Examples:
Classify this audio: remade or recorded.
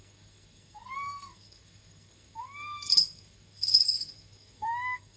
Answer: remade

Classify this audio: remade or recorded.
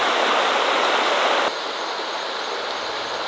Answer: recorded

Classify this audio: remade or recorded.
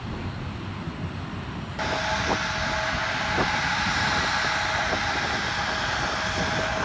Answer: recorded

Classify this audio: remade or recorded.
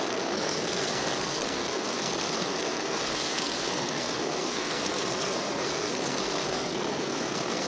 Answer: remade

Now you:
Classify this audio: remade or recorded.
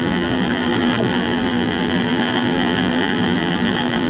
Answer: remade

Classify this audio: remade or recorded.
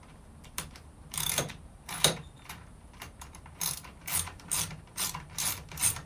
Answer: remade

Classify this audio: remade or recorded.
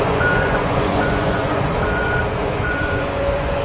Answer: remade